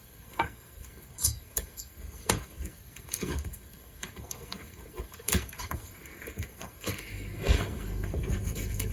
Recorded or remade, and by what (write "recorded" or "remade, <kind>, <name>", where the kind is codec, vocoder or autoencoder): remade, codec, SNAC